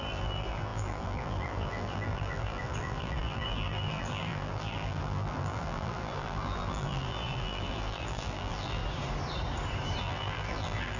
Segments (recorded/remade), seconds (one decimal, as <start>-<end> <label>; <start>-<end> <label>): 0.0-8.8 remade; 8.8-10.0 recorded; 10.0-11.0 remade